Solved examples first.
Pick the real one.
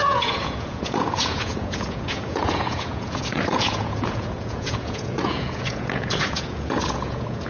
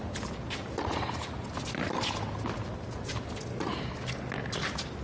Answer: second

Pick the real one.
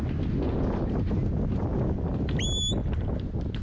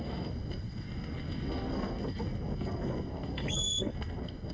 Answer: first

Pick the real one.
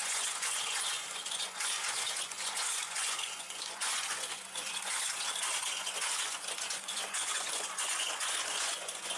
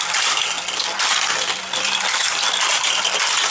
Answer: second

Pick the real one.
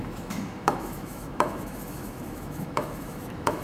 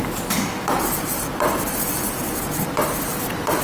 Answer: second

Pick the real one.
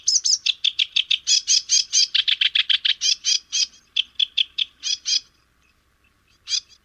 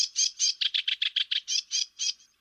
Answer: first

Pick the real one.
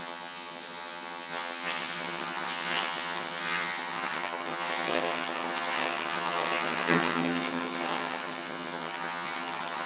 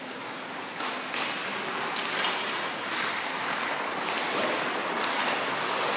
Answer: second